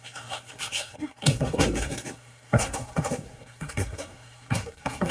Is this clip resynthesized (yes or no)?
yes